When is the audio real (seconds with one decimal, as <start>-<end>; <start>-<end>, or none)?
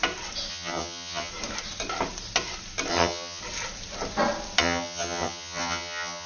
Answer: 0.0-0.5; 1.3-2.9; 3.4-4.6